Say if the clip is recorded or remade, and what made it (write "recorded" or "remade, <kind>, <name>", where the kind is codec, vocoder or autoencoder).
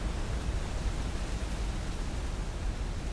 recorded